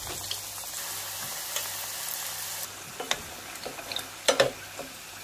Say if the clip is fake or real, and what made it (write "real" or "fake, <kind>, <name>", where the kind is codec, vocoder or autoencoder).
real